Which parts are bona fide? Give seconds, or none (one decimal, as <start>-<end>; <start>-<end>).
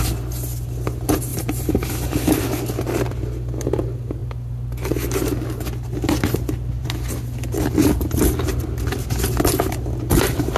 0.0-1.3; 2.4-10.6